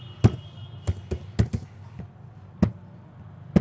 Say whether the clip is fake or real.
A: real